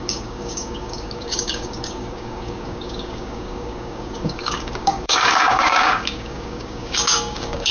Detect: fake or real fake